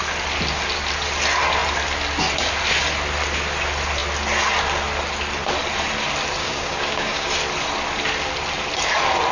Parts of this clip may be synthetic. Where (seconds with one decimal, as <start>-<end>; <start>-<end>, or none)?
6.4-7.3